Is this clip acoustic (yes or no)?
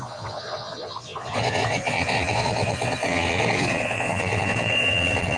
no